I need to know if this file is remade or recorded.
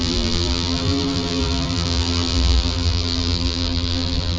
remade